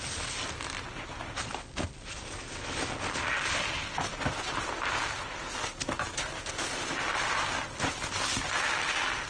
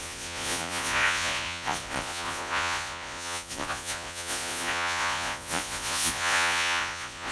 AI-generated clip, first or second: second